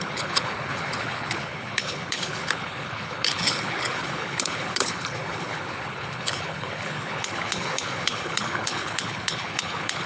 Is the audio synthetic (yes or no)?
yes